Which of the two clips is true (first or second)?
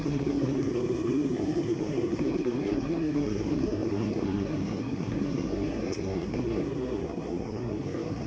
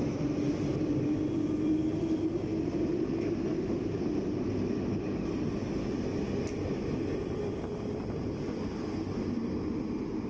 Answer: second